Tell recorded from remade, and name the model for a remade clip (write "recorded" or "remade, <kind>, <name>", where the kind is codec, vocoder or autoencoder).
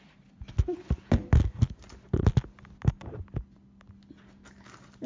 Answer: recorded